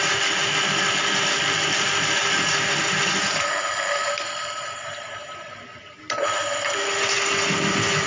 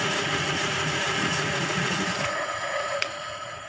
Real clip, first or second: first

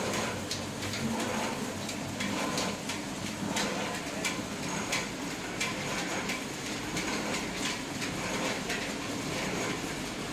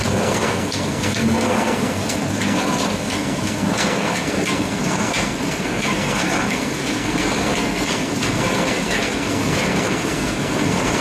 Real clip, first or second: first